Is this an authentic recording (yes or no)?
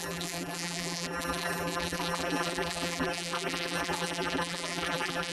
no